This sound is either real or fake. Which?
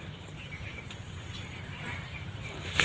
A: fake